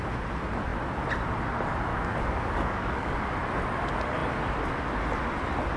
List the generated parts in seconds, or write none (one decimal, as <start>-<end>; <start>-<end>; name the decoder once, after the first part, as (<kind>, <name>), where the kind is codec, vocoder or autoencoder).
1.9-3.3 (codec, DAC)